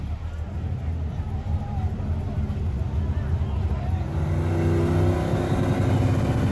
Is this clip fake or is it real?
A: real